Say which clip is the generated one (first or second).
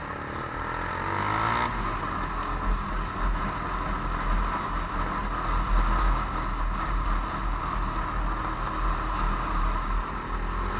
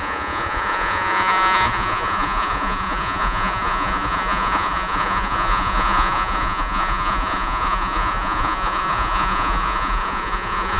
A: second